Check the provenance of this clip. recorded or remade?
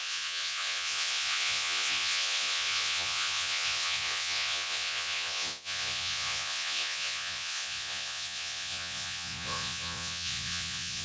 remade